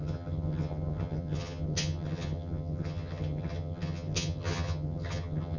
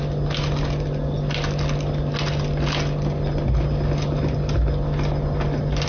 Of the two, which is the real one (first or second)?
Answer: second